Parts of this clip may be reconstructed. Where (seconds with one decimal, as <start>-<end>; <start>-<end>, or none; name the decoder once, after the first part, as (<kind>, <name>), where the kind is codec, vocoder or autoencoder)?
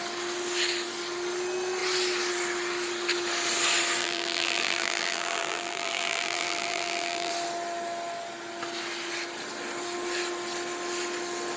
4.0-7.3 (vocoder, BigVGAN v2)